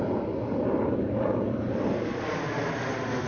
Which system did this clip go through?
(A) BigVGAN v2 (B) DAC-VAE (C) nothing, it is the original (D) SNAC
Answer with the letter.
C